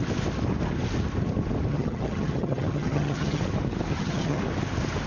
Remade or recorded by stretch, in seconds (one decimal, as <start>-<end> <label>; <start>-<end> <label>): 0.0-1.7 recorded; 1.7-3.4 remade; 3.4-3.9 recorded; 3.9-4.4 remade; 4.4-5.1 recorded